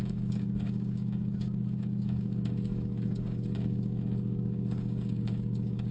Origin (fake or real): fake